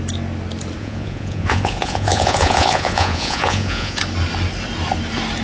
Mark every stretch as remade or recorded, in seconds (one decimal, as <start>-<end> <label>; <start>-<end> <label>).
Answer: 0.0-0.8 recorded; 0.8-4.0 remade; 4.0-5.4 recorded